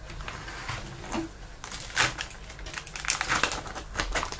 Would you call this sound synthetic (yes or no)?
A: no